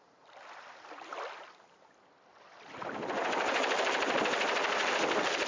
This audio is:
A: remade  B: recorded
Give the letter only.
B